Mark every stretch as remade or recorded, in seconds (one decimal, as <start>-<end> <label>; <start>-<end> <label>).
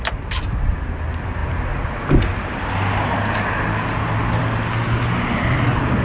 0.0-6.0 recorded